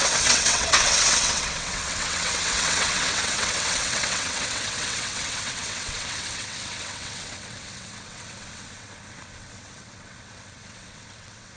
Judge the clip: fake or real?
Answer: fake